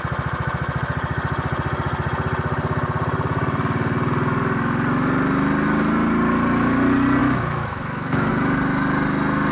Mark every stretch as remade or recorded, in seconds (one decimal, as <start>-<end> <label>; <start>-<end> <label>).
0.0-7.2 recorded; 7.2-8.3 remade; 8.3-9.5 recorded